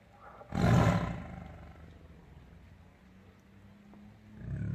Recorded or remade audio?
recorded